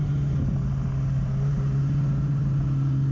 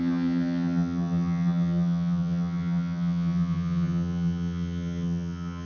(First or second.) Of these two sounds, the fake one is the second